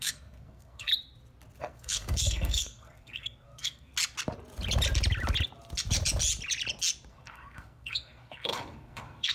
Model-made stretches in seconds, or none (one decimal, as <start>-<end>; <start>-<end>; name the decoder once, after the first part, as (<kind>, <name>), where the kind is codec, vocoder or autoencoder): 0.0-0.9 (codec, SNAC); 1.6-3.9; 7.1-9.3